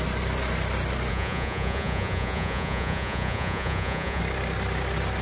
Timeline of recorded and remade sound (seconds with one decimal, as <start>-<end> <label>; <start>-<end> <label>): 0.0-1.1 recorded; 1.1-4.2 remade; 4.2-5.2 recorded